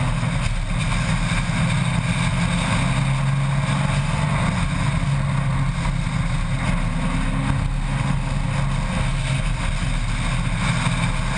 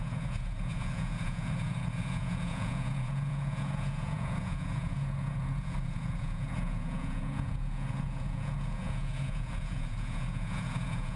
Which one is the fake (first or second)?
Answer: second